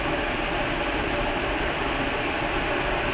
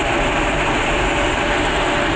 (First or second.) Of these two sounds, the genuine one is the second